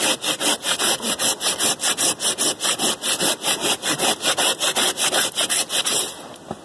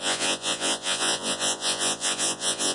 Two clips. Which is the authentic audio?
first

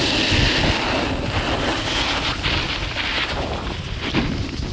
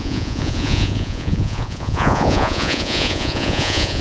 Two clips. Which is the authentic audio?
first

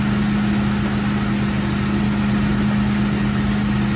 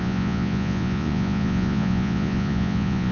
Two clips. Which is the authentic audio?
first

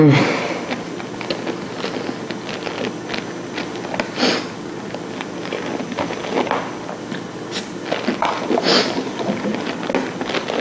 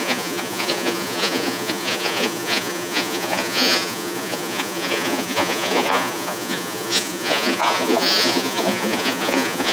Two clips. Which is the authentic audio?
first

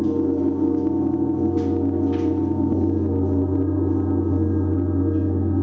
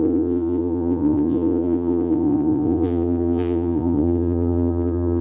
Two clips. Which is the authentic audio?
first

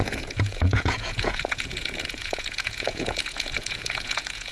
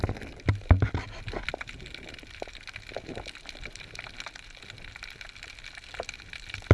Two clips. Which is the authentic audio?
second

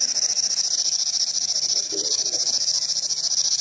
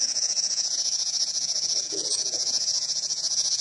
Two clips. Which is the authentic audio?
first